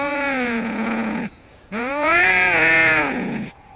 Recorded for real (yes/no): no